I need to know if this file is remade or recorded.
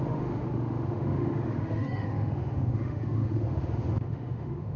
remade